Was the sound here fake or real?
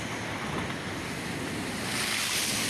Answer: real